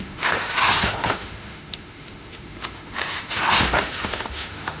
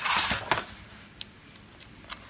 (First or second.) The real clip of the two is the second